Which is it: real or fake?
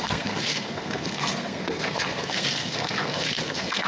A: fake